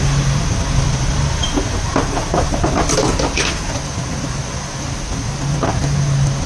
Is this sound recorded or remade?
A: recorded